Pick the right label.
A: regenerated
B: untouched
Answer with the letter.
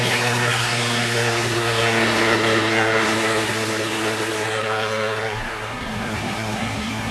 A